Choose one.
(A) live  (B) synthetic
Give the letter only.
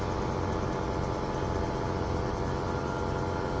A